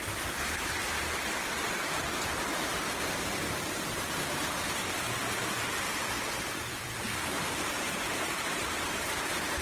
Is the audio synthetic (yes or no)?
yes